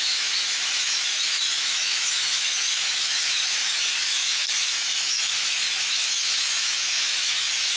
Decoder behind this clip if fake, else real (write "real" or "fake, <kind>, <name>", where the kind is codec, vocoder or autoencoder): fake, autoencoder, DAC-VAE